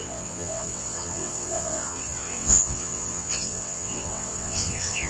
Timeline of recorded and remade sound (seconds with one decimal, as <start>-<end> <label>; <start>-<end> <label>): 0.0-5.1 remade